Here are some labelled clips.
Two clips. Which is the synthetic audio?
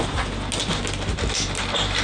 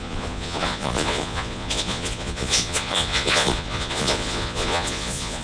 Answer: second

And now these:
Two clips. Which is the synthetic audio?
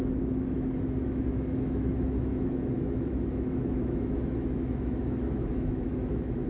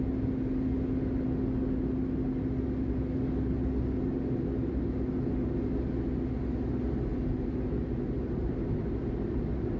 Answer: first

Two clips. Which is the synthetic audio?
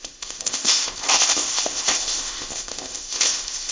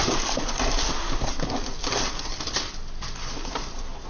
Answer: first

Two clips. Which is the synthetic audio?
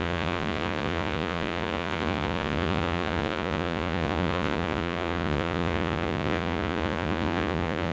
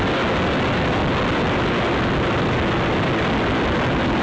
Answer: first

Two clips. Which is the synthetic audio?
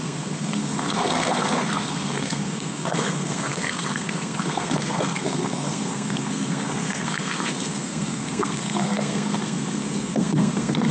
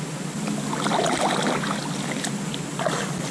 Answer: first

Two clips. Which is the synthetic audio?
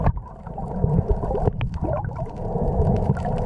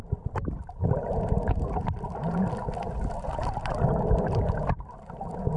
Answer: first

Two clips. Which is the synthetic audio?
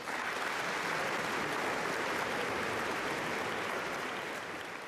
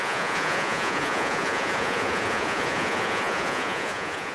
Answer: second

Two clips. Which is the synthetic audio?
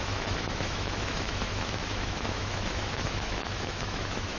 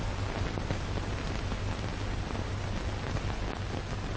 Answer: first